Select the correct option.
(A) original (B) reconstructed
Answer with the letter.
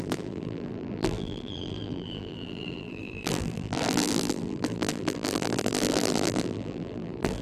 B